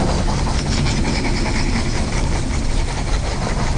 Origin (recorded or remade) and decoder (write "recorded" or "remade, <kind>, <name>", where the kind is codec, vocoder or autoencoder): recorded